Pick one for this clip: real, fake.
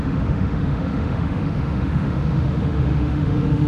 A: fake